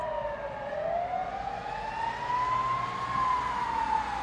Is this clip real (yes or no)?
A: yes